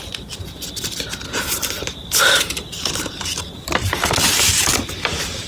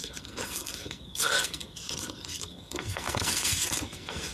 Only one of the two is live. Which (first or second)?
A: first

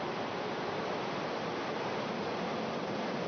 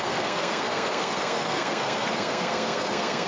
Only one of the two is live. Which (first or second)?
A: first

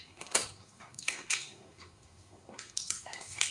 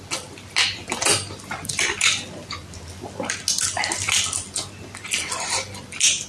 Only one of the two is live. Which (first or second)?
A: second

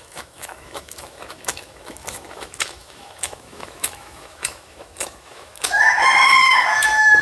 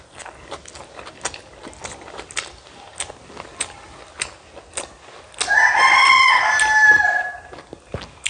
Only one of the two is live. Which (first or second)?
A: second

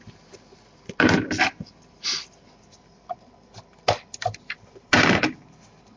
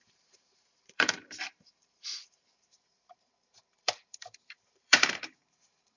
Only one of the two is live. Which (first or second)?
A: first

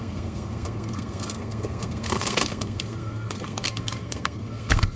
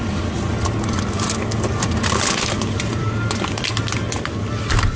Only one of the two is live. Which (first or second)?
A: second